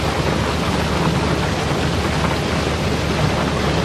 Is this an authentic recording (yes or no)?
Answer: yes